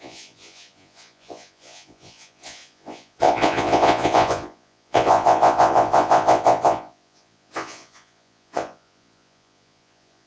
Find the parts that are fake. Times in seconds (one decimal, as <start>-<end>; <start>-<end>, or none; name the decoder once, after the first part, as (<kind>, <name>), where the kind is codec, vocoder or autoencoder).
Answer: 0.0-10.3 (vocoder, Vocos)